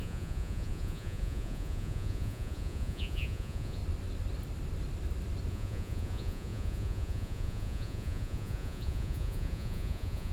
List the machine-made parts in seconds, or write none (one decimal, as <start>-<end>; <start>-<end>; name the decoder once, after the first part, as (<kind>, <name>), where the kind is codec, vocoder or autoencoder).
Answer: 0.0-3.8 (vocoder, Vocos); 5.5-10.3